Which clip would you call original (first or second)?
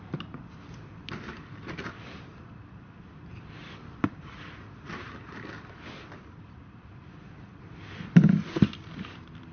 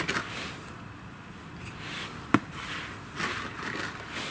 second